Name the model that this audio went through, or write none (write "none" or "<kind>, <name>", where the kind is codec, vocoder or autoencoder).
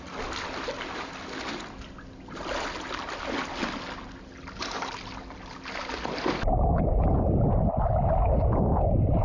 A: none